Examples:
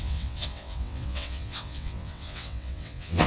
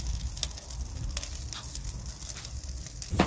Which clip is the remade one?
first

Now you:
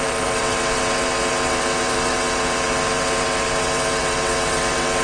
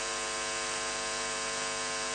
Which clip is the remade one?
first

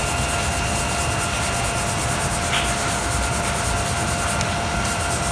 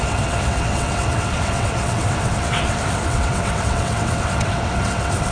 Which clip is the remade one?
second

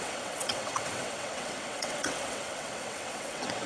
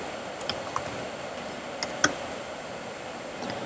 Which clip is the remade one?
first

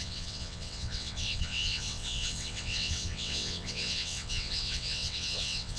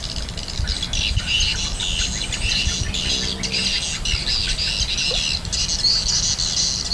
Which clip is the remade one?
first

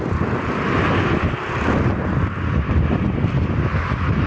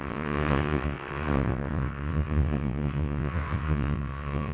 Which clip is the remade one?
second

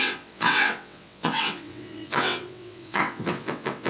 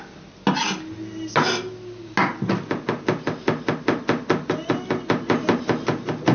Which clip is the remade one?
first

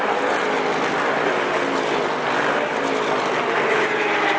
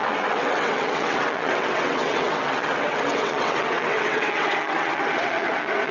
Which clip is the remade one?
second